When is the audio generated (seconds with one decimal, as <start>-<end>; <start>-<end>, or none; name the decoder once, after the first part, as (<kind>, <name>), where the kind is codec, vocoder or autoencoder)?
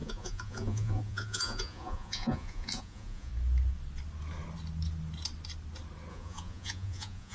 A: 0.0-3.3 (vocoder, Vocos); 6.1-7.3